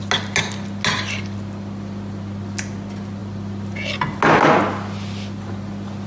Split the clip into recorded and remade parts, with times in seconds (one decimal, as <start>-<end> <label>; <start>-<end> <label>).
0.0-6.1 recorded